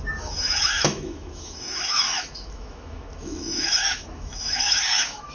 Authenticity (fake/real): fake